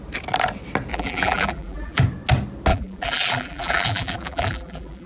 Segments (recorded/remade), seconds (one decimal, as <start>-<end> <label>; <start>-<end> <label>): 0.0-0.9 recorded; 0.9-2.0 remade; 2.0-2.7 recorded; 2.7-5.1 remade